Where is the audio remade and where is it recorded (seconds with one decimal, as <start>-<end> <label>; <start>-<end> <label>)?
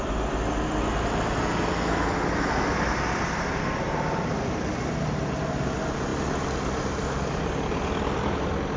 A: 0.0-8.8 recorded